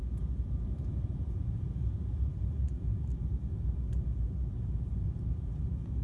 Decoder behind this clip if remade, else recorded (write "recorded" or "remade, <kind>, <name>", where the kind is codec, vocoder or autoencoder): remade, vocoder, BigVGAN v2